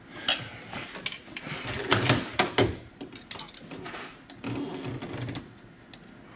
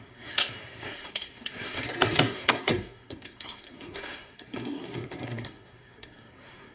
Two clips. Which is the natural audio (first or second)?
first